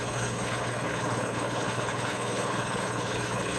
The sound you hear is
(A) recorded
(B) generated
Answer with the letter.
B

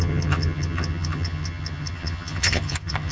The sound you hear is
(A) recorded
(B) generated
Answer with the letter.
B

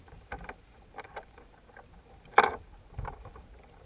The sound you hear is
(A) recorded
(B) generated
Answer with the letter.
A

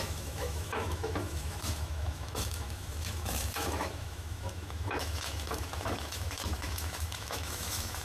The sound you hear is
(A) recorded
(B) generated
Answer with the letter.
B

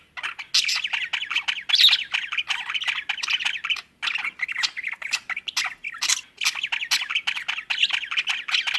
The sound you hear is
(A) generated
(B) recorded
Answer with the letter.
B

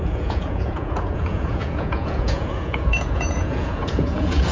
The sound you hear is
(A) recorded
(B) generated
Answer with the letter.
B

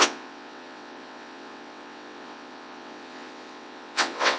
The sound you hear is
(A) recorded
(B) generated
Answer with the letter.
B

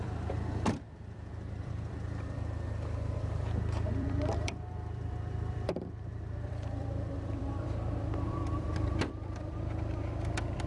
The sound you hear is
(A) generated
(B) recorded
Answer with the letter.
A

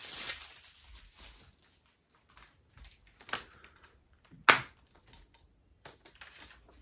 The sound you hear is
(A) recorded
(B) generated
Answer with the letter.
A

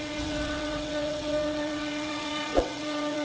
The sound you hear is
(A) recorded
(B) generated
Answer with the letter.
B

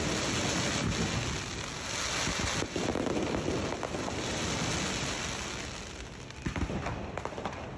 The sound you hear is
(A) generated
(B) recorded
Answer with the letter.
B